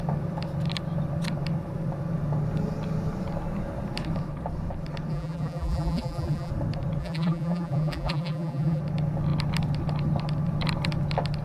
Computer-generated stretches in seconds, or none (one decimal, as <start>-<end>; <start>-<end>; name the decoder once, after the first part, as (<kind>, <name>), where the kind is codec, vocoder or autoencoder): 5.1-6.5 (vocoder, BigVGAN v2); 7.0-8.8